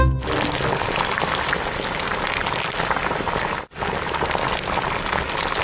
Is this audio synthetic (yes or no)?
no